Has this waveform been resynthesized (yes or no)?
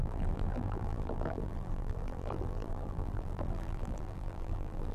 yes